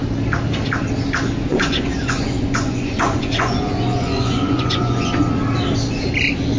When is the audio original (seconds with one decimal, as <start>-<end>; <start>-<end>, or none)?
0.0-1.5; 5.2-6.6